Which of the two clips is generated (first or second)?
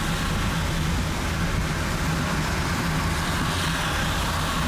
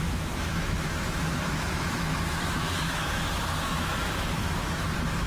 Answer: second